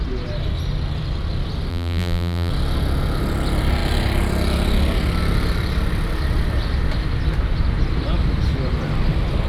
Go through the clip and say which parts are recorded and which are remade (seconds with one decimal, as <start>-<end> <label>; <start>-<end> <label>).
0.0-1.7 recorded; 1.7-2.5 remade; 2.5-9.5 recorded